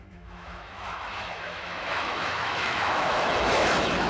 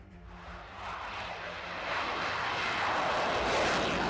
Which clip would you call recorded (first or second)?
second